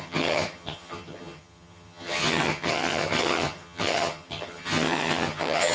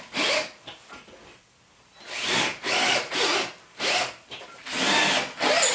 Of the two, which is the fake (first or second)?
first